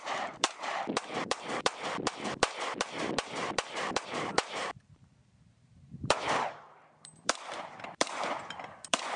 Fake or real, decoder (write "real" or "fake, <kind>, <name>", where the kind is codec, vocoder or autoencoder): fake, vocoder, BigVGAN v2